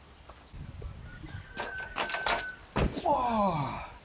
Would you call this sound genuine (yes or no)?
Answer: yes